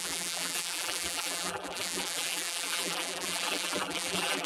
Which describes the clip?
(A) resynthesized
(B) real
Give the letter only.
A